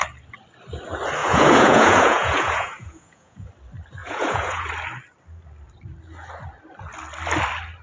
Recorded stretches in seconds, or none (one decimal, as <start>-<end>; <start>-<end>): 0.0-1.2; 3.5-4.0; 4.7-7.8